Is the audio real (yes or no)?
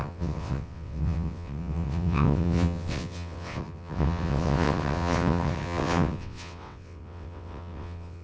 no